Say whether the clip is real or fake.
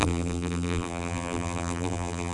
fake